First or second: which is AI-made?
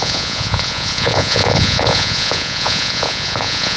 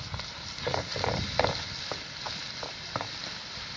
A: first